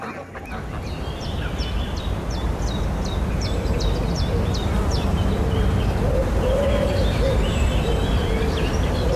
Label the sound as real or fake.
real